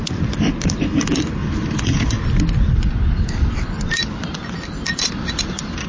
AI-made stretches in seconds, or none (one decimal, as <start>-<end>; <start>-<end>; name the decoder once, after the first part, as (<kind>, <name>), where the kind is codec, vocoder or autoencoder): none